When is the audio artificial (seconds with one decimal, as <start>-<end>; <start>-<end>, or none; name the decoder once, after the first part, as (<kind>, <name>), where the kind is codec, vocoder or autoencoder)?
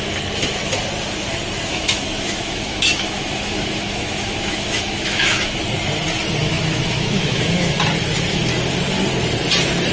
1.7-5.6 (autoencoder, DAC-VAE); 6.4-7.7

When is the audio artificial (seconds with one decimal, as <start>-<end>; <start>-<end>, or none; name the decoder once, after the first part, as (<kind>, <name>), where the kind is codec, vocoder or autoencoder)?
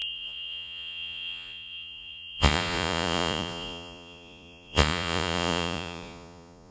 0.0-6.7 (vocoder, Vocos)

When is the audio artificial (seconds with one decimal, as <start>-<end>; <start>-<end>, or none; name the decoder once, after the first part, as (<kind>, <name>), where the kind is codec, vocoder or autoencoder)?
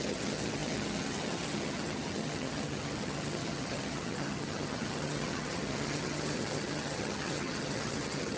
0.0-8.4 (vocoder, HiFi-GAN)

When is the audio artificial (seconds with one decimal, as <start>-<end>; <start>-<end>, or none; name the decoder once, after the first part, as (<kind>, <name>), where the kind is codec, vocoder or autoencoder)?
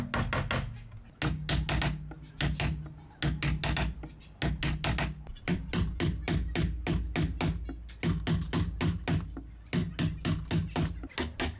none